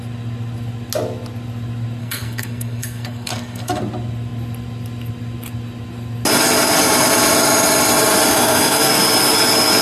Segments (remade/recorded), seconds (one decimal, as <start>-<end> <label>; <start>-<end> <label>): 0.0-2.0 recorded; 2.0-3.8 remade; 3.8-8.3 recorded; 8.3-9.0 remade; 9.0-9.8 recorded